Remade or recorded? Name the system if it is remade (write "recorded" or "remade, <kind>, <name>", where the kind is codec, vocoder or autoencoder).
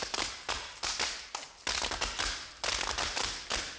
recorded